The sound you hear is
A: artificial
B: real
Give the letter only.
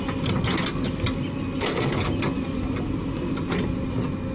B